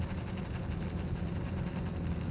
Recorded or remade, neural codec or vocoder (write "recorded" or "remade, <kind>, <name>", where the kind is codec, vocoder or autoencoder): recorded